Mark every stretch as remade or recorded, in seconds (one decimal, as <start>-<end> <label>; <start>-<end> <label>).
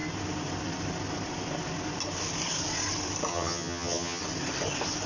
0.0-3.3 recorded; 3.3-4.2 remade; 4.2-5.1 recorded